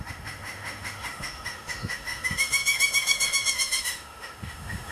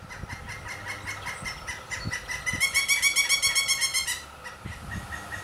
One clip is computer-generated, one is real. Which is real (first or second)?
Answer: second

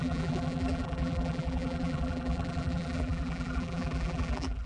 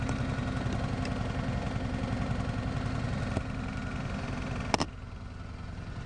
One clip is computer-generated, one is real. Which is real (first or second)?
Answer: second